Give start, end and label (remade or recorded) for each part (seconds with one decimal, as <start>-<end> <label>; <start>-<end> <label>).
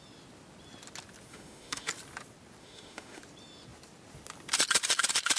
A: 0.0-1.3 recorded; 1.3-1.9 remade; 1.9-2.6 recorded; 2.6-3.2 remade; 3.2-5.4 recorded